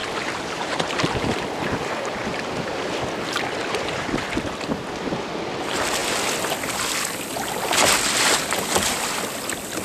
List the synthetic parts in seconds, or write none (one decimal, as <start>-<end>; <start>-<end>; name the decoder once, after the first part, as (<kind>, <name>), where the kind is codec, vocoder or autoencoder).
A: 0.0-1.4 (vocoder, BigVGAN v2)